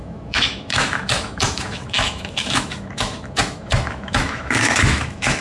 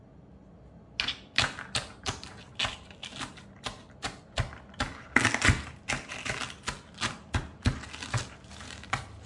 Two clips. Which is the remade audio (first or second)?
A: first